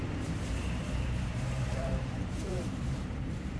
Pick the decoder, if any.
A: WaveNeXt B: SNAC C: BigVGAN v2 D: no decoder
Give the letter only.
C